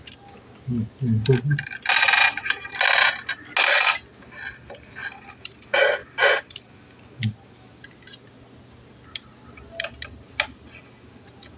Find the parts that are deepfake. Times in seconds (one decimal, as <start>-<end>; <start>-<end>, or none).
none